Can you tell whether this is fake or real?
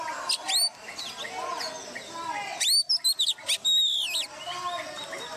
real